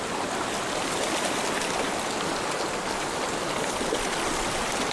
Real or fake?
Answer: fake